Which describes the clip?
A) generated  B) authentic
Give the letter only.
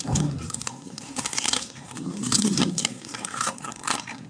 A